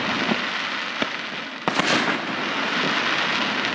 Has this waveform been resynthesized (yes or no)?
no